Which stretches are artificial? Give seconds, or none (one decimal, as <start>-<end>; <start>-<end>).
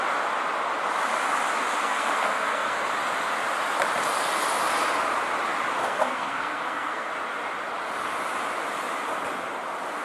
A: 1.8-2.8; 5.8-7.1